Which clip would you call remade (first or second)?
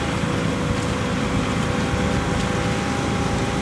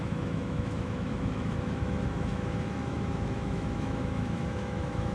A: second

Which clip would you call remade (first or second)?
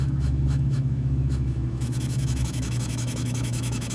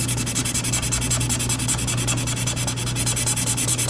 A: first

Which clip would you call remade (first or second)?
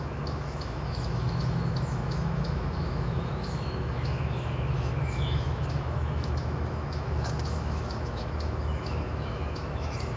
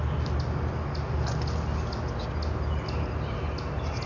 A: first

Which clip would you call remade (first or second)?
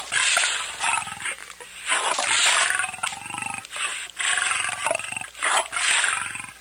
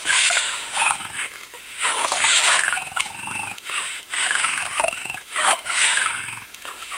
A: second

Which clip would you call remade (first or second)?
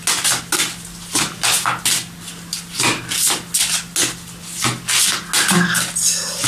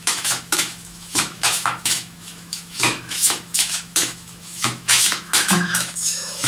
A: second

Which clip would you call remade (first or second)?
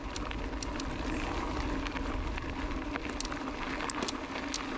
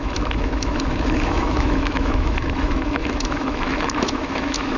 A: second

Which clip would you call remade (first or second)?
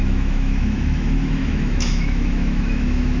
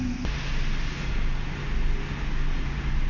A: first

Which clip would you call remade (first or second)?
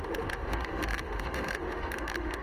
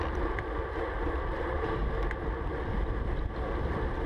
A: first